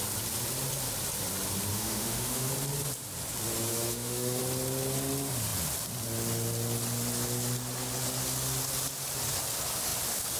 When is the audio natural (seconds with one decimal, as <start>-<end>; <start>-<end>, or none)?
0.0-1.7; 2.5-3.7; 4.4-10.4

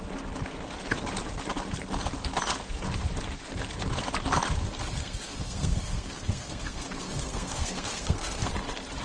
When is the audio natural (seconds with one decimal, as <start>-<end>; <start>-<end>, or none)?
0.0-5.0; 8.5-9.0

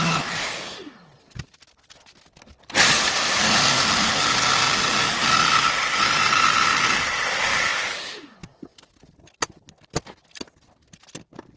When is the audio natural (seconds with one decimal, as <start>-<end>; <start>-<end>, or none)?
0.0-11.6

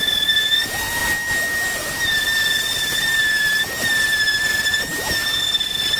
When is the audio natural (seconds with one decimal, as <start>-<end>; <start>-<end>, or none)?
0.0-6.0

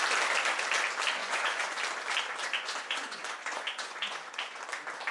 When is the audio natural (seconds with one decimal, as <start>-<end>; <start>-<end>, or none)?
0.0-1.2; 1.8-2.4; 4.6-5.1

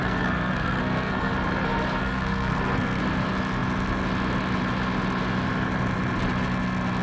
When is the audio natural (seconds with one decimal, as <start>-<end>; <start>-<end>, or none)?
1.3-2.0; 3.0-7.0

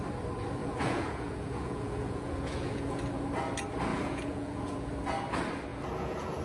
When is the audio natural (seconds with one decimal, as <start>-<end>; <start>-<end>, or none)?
0.0-0.6; 3.0-3.9; 4.9-5.7

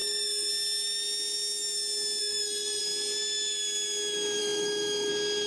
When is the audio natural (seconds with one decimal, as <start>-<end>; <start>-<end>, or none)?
0.5-2.2; 2.8-4.4; 5.1-5.5